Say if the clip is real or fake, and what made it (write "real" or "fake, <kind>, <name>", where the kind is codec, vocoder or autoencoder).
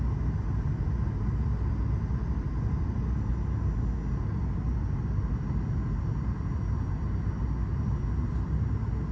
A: real